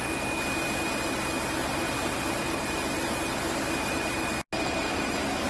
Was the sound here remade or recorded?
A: recorded